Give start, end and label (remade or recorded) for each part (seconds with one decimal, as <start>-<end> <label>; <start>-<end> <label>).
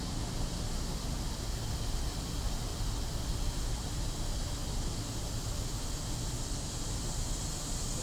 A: 0.0-8.0 recorded